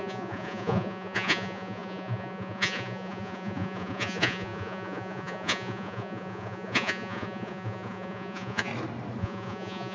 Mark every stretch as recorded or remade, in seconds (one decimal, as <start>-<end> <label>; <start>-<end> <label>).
0.0-8.7 remade; 8.7-9.2 recorded; 9.2-9.9 remade